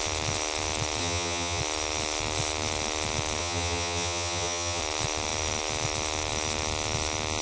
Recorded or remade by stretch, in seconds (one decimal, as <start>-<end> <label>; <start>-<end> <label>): 0.0-1.0 recorded; 1.0-1.6 remade; 1.6-3.4 recorded; 3.4-4.8 remade; 4.8-7.4 recorded